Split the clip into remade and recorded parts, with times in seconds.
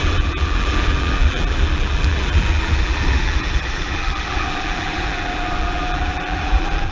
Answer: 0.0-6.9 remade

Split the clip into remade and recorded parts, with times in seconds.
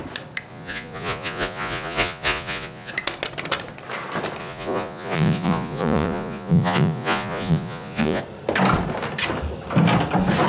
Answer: 0.0-0.5 recorded; 0.5-2.9 remade; 2.9-4.4 recorded; 4.4-8.2 remade; 8.2-10.5 recorded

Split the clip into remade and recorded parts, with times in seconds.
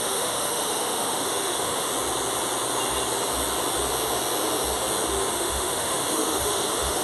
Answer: 0.0-1.9 remade; 1.9-5.3 recorded; 5.3-7.0 remade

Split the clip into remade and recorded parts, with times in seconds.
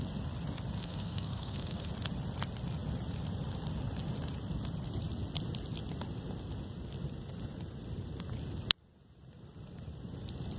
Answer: 0.0-0.8 recorded; 0.8-1.9 remade; 1.9-10.6 recorded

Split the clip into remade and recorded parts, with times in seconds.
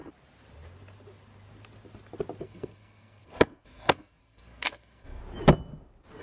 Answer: 0.0-2.4 recorded; 2.4-5.2 remade; 5.2-6.2 recorded